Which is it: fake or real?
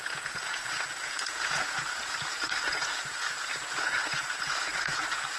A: fake